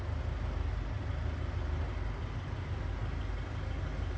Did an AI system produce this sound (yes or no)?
no